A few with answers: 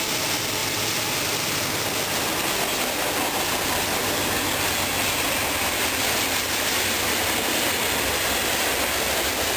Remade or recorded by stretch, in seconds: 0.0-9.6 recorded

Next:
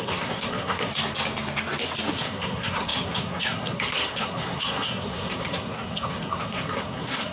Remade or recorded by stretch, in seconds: 0.0-0.9 remade; 0.9-2.1 recorded; 2.1-7.3 remade

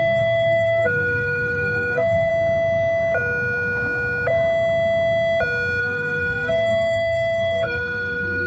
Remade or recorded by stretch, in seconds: 0.0-2.3 remade; 2.3-5.8 recorded; 5.8-8.5 remade

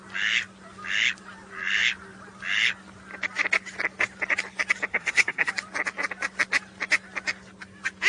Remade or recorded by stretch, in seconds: 0.0-4.9 recorded; 4.9-5.5 remade; 5.5-8.1 recorded